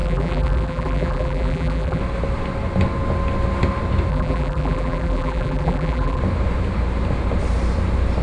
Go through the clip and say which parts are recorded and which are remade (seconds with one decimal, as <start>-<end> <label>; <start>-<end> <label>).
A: 0.0-2.0 remade; 2.0-4.1 recorded; 4.1-6.2 remade; 6.2-8.2 recorded